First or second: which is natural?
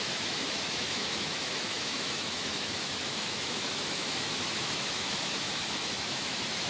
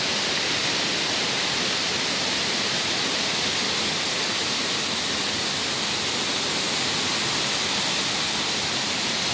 second